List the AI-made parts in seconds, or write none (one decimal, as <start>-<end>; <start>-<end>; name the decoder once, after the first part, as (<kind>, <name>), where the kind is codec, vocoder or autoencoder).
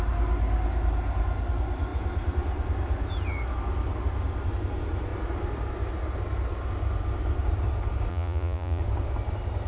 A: 8.1-8.8 (vocoder, Vocos)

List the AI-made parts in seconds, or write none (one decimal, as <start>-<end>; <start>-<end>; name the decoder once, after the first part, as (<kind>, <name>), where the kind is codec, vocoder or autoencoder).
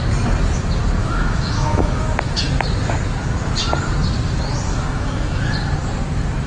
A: 1.0-2.4 (autoencoder, DAC-VAE); 4.7-5.4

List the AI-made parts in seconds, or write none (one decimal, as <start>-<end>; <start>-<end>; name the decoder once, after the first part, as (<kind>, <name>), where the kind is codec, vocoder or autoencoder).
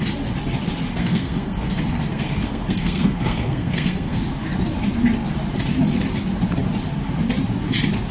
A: 0.9-4.2 (codec, SNAC)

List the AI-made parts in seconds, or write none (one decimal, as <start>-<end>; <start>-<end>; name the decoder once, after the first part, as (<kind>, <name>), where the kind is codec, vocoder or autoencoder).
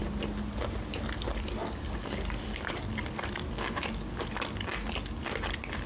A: none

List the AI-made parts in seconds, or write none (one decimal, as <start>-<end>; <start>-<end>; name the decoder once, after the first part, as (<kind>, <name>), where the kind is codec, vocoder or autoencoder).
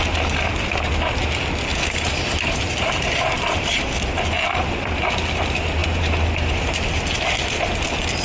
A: 1.7-3.8 (vocoder, BigVGAN v2); 5.8-6.8